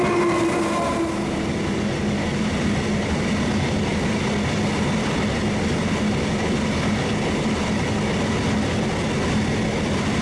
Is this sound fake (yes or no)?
no